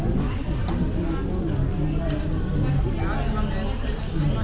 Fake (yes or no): no